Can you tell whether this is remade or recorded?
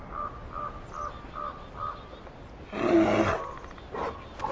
recorded